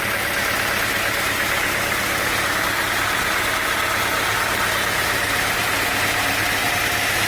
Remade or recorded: recorded